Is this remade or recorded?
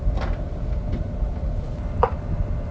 recorded